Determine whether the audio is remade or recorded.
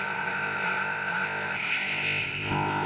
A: remade